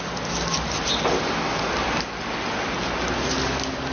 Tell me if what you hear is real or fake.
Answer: real